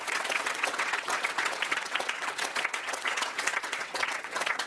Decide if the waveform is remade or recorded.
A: remade